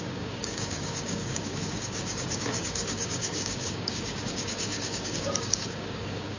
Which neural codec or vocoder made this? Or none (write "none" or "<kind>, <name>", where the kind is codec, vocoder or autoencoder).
codec, DAC